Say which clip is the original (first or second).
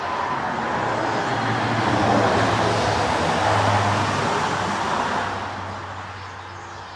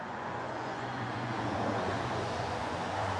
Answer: first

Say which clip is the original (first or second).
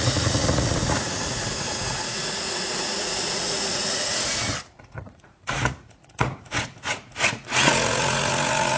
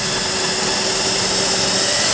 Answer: second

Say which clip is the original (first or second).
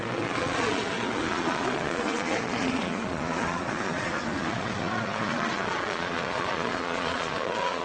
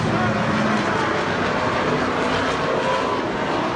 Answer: second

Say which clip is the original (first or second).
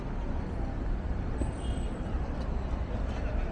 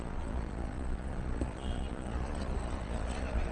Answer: first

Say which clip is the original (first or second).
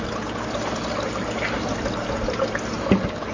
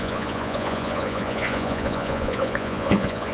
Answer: first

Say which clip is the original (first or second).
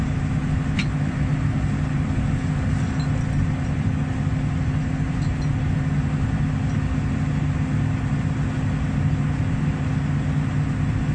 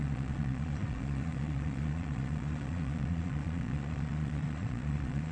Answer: first